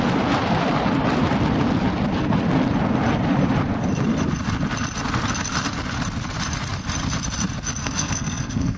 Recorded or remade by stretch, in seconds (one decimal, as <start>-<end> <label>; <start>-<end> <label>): 0.0-7.8 recorded; 7.8-8.8 remade

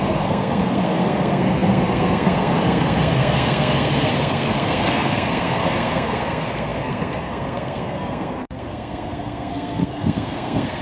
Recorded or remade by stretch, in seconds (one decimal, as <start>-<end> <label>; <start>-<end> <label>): 0.0-10.8 remade

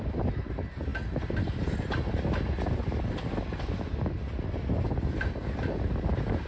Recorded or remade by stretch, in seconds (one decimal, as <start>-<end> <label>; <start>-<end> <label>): 0.0-6.5 recorded